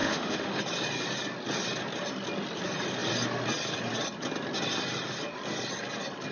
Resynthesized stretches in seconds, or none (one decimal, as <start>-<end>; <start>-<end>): 0.0-0.6